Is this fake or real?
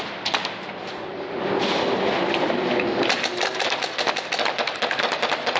real